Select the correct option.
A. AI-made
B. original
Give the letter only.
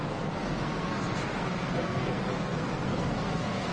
A